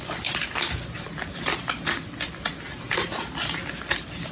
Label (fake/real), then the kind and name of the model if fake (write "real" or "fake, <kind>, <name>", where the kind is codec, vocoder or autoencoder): real